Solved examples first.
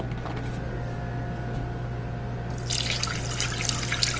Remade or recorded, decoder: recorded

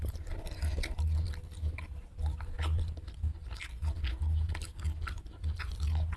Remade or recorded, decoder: recorded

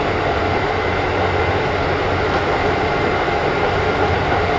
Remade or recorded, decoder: recorded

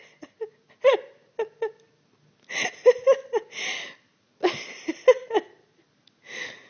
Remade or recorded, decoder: recorded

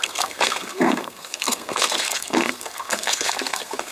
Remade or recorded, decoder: remade, codec, SNAC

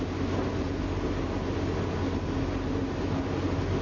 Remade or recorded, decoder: recorded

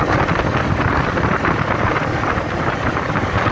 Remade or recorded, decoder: recorded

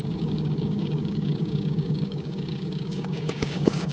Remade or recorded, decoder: remade, codec, DAC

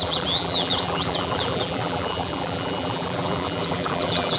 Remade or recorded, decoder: remade, vocoder, BigVGAN v2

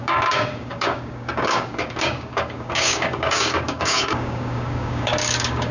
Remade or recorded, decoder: remade, codec, DAC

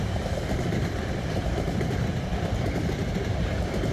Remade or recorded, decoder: remade, vocoder, BigVGAN v2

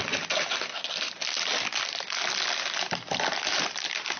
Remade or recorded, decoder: recorded